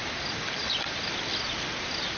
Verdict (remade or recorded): recorded